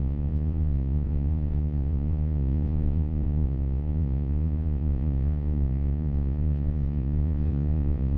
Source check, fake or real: fake